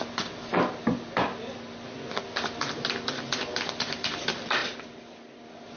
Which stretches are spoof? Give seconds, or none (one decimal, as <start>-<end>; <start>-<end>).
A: none